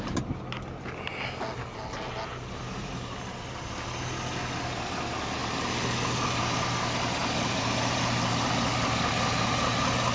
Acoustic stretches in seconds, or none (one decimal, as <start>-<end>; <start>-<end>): 0.0-10.1